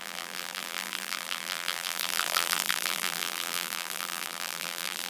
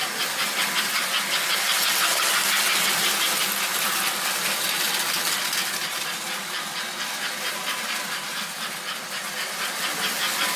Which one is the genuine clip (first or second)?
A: second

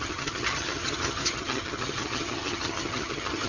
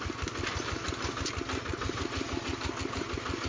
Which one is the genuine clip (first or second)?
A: second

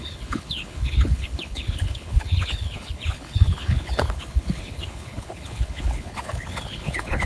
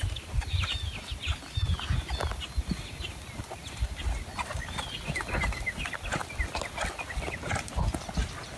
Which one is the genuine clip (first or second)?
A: second